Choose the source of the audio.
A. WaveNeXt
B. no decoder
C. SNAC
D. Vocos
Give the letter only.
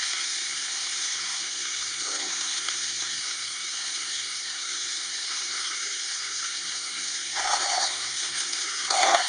C